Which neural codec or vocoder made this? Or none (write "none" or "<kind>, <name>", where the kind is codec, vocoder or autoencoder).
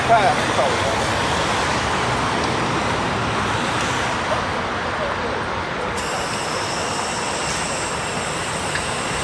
none